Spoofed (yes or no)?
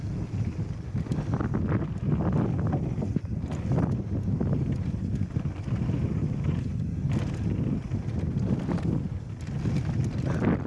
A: no